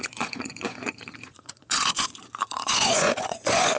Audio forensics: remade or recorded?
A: remade